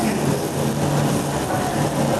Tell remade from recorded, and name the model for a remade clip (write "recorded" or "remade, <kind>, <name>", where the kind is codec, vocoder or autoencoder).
recorded